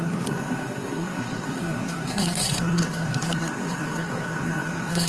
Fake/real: fake